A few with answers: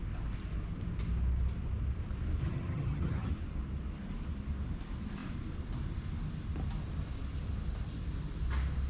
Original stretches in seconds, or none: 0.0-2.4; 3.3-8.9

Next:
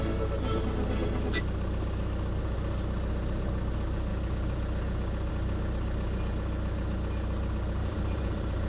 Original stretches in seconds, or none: 0.0-7.8